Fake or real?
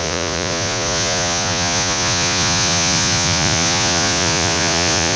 fake